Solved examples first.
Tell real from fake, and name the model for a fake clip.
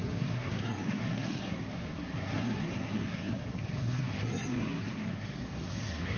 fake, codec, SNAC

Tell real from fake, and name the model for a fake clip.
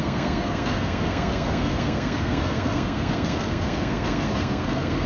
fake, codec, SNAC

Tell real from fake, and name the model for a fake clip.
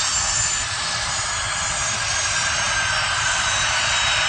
real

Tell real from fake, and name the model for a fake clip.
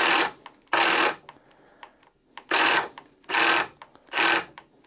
real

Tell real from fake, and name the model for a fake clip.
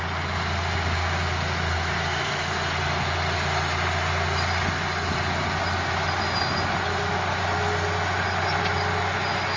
real